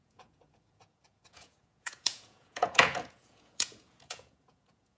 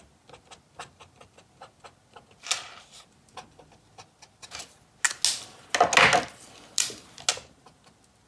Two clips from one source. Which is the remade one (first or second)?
first